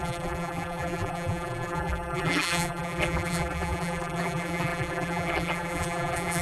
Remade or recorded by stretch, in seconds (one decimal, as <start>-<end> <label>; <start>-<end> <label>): 0.0-6.4 remade